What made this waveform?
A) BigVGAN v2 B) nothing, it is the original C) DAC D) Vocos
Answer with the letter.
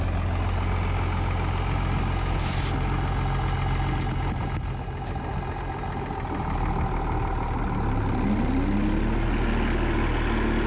B